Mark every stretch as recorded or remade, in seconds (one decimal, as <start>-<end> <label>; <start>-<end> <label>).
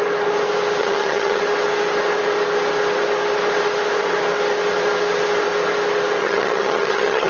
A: 0.0-0.8 recorded; 0.8-1.4 remade; 1.4-6.2 recorded; 6.2-7.3 remade